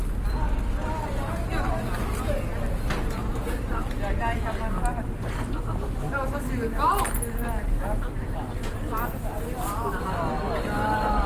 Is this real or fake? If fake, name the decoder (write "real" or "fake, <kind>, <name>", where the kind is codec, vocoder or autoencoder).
real